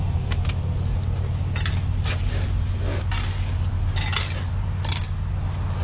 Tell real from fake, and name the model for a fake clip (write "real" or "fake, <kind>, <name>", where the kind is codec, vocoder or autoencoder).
real